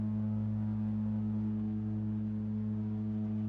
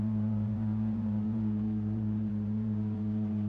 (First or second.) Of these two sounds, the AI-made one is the second